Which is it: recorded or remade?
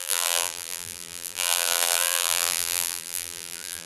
remade